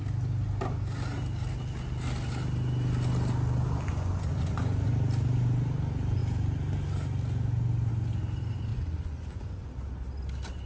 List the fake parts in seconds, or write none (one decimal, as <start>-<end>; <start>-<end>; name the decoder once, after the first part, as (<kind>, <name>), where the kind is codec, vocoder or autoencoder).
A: 3.9-4.9 (vocoder, Vocos); 8.7-9.7

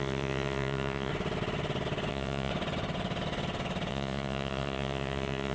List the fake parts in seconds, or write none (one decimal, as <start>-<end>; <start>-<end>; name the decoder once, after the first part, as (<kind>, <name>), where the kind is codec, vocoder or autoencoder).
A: 0.0-1.1 (vocoder, Vocos); 2.1-2.5; 3.9-5.5